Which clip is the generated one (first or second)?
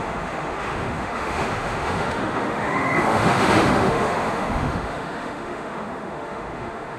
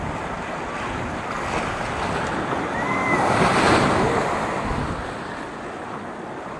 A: first